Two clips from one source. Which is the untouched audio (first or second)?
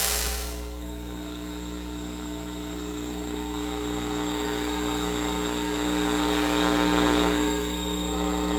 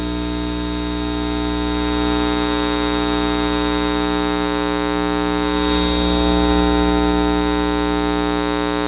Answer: second